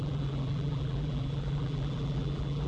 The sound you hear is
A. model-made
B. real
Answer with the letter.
A